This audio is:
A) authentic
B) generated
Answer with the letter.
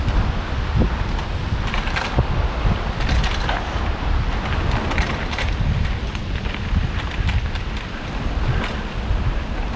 A